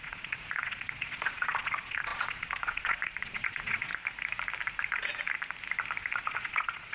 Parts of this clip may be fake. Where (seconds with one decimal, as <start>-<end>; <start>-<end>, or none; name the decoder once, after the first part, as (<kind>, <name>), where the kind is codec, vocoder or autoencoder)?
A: 0.0-3.9 (vocoder, Vocos); 6.0-6.9